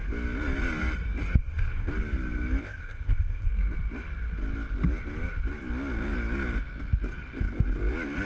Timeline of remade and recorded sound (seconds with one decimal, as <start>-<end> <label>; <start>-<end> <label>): 0.0-1.4 recorded; 1.4-1.9 remade; 1.9-2.6 recorded; 2.6-3.5 remade; 3.5-8.3 recorded